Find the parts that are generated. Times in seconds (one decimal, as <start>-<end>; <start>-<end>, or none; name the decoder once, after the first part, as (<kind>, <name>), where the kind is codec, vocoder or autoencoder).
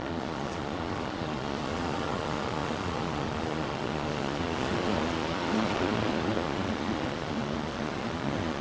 0.0-8.6 (vocoder, Vocos)